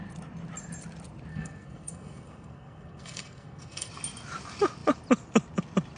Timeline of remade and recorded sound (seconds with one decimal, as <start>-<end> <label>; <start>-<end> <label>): 0.0-1.3 recorded; 1.3-3.9 remade; 3.9-6.0 recorded